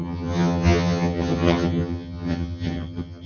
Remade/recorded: remade